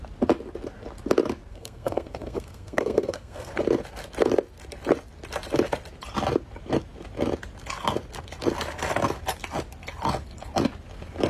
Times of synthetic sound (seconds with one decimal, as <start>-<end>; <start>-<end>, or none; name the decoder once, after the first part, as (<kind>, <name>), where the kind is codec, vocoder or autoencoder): 1.5-3.5 (codec, SNAC)